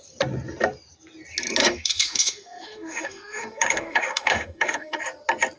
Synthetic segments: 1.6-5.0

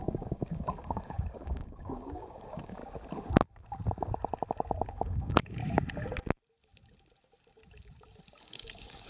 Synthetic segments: 0.0-2.8; 4.9-5.6; 8.4-9.1